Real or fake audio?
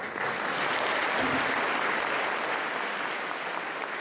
real